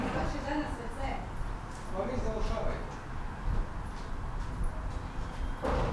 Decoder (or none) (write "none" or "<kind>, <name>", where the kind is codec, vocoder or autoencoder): none